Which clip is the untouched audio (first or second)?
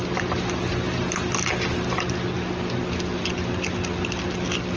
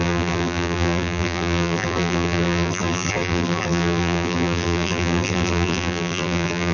first